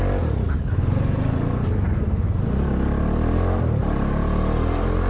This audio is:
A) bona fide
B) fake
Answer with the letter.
A